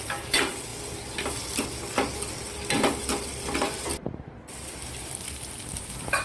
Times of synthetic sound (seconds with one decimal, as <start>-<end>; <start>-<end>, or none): none